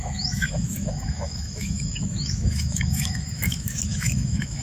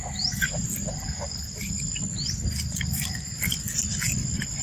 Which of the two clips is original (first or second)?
second